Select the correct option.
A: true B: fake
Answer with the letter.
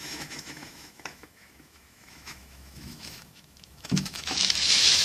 B